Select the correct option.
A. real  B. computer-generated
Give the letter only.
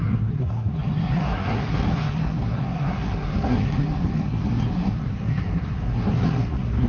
B